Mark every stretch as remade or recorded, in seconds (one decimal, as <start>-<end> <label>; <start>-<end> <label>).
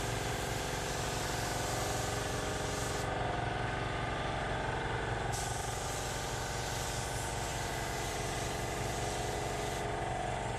0.0-10.6 recorded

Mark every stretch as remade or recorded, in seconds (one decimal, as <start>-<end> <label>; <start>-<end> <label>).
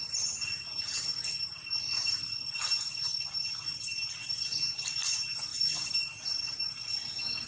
0.0-7.5 recorded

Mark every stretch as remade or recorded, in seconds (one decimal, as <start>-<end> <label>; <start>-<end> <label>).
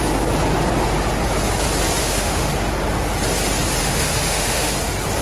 0.0-2.0 recorded; 2.0-2.5 remade; 2.5-3.8 recorded; 3.8-4.7 remade; 4.7-5.2 recorded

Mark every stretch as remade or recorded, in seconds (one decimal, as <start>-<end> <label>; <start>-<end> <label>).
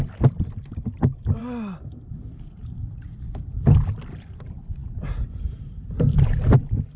0.0-4.8 recorded; 4.8-5.8 remade; 5.8-7.0 recorded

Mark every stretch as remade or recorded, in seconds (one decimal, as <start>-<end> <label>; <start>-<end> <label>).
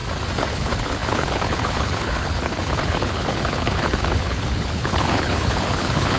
0.0-0.5 recorded; 0.5-6.2 remade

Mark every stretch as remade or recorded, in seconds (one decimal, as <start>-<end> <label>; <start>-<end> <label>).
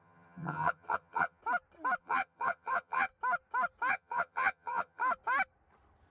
0.0-1.4 remade; 1.4-2.0 recorded; 2.0-3.1 remade; 3.1-3.9 recorded; 3.9-5.0 remade; 5.0-6.1 recorded